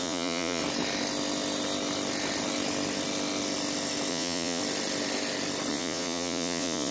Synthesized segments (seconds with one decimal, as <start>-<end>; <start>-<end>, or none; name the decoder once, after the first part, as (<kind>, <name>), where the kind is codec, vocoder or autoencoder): 0.0-0.6 (vocoder, Vocos); 4.1-4.6; 5.7-6.9